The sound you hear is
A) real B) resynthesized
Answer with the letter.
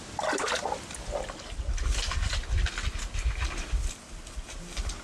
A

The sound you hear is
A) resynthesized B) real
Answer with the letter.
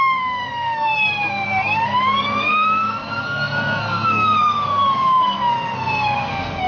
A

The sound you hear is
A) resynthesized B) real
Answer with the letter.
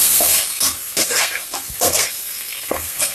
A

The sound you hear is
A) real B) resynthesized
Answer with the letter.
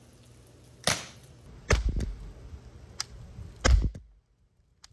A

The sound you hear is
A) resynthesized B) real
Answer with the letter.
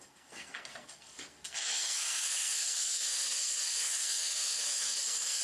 A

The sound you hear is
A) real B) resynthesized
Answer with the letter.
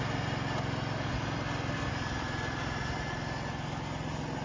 A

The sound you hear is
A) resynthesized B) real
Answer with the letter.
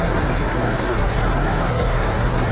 A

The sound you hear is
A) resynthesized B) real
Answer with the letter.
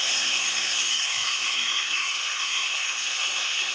A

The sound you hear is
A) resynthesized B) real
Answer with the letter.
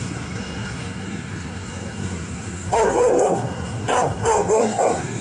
A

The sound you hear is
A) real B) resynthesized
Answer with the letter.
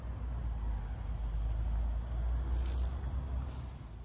A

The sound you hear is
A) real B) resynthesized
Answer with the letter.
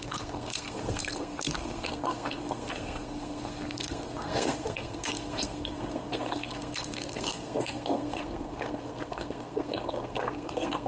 B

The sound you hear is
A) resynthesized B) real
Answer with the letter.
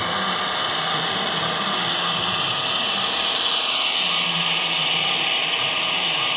B